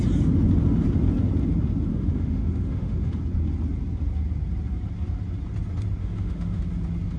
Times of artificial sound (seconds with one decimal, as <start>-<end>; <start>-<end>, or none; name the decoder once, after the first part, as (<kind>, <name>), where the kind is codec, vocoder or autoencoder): 1.9-3.1 (autoencoder, DAC-VAE); 6.0-6.6